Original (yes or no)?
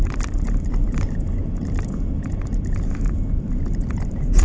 no